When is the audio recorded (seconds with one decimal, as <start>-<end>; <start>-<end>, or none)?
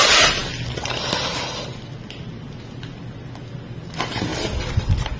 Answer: 0.0-5.2